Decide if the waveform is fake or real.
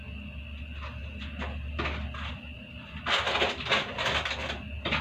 real